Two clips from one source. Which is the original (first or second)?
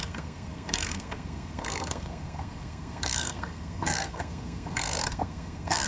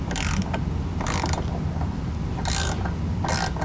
second